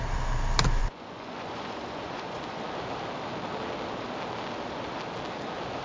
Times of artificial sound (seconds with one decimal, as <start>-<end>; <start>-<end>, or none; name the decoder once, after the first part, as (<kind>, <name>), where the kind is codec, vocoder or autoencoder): 0.8-2.6 (vocoder, Vocos)